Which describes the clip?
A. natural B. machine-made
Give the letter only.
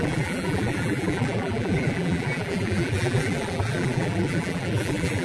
B